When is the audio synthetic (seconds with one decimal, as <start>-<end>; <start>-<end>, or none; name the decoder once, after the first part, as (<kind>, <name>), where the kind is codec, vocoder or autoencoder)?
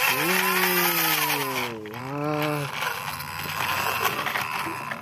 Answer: none